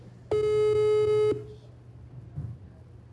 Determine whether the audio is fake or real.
real